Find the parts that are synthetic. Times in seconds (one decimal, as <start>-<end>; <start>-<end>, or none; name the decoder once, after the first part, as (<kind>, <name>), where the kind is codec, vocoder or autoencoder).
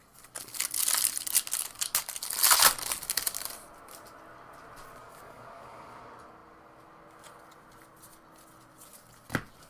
5.0-6.0 (codec, DAC)